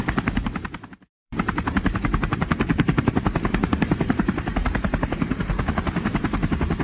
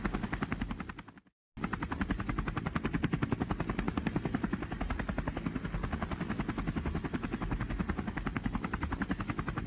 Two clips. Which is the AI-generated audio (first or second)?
first